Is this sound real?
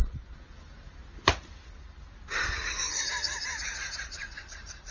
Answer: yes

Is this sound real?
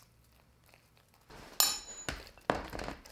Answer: yes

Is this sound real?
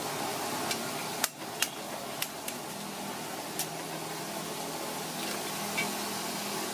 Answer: yes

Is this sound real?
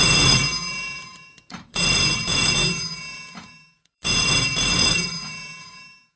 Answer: no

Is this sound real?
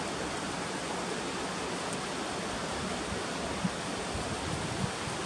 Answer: yes